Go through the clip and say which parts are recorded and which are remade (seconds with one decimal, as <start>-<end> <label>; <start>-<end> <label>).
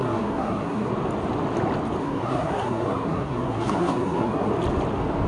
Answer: 0.0-0.9 remade; 0.9-2.0 recorded; 2.0-4.5 remade; 4.5-5.3 recorded